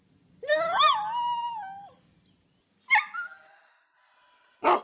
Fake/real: real